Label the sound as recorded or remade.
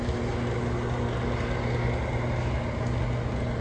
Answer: recorded